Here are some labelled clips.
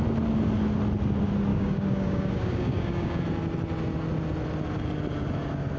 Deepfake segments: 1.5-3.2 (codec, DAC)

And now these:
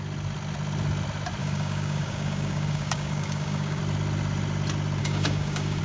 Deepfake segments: 1.4-3.8 (codec, DAC); 5.0-5.8

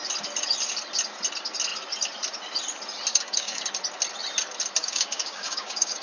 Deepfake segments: 3.1-3.6 (codec, DAC); 4.8-6.0

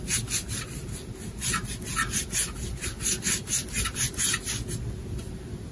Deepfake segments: none

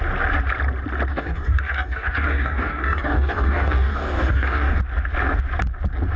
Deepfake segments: 1.1-4.8 (codec, DAC)

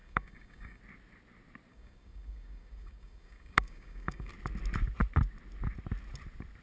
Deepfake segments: 0.0-0.8 (codec, DAC); 1.7-4.3

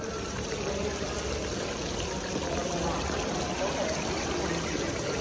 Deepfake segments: none

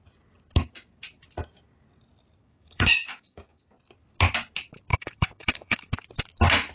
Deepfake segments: 2.4-3.6 (codec, DAC); 4.9-5.9